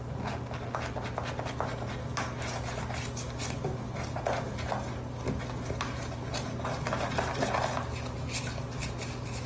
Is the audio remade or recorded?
recorded